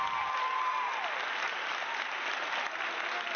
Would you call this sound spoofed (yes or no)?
no